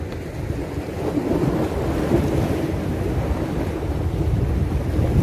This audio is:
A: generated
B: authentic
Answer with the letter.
B